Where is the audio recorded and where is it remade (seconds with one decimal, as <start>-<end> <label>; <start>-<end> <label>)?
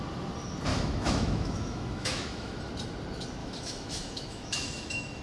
0.0-0.7 recorded; 0.7-2.6 remade; 2.6-3.4 recorded; 3.4-5.2 remade